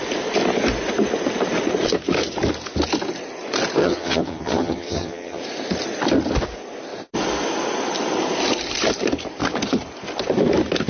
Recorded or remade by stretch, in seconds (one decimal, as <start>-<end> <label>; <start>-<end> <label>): 0.0-3.8 recorded; 3.8-5.4 remade; 5.4-10.9 recorded